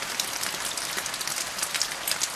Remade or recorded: recorded